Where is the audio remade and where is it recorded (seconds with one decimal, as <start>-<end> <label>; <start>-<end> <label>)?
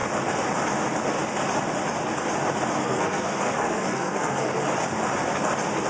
0.0-2.8 recorded; 2.8-4.6 remade; 4.6-5.9 recorded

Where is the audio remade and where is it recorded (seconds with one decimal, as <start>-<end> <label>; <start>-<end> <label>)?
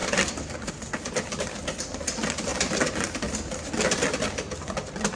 0.0-5.2 recorded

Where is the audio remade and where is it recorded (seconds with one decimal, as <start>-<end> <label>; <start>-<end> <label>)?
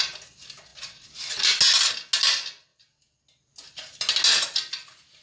0.0-5.2 recorded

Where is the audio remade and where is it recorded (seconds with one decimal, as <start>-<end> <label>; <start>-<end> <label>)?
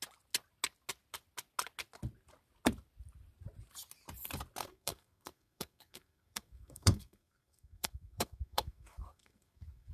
0.0-4.6 recorded; 4.6-9.9 remade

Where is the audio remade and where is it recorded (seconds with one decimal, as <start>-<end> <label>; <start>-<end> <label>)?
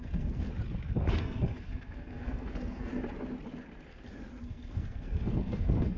0.0-0.5 remade; 0.5-1.1 recorded; 1.1-2.9 remade; 2.9-4.4 recorded; 4.4-6.0 remade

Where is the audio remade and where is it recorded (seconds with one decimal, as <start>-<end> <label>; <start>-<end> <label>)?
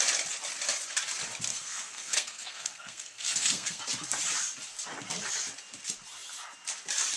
0.0-1.5 recorded; 1.5-3.8 remade; 3.8-7.2 recorded